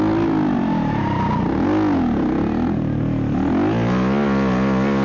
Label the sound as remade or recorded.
recorded